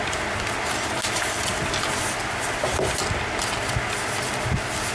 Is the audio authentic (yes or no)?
yes